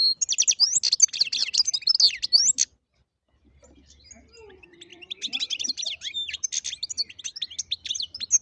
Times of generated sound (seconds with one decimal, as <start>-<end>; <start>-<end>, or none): none